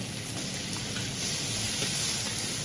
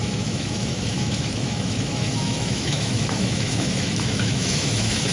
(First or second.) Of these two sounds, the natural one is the first